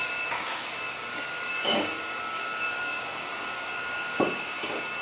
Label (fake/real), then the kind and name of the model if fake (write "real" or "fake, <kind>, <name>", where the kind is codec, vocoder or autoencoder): fake, codec, DAC